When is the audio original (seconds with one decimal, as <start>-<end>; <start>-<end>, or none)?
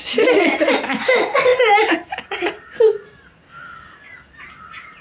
0.0-5.0